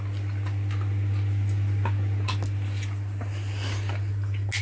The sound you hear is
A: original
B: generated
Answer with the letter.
A